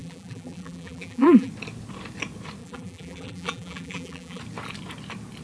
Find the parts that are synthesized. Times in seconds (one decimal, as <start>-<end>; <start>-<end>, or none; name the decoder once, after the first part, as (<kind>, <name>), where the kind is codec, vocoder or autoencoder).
0.0-1.5 (vocoder, BigVGAN v2); 2.6-4.4